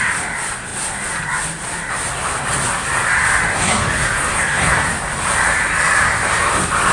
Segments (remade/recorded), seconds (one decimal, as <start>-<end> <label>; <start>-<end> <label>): 0.0-3.5 recorded; 3.5-4.8 remade; 4.8-6.9 recorded